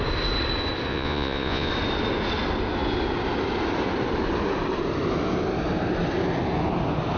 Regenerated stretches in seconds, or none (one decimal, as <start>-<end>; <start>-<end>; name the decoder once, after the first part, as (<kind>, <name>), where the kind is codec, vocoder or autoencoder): 0.9-1.7 (vocoder, Vocos)